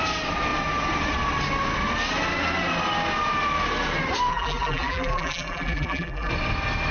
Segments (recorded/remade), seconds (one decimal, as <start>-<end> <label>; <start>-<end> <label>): 0.0-4.3 recorded; 4.3-6.3 remade; 6.3-6.9 recorded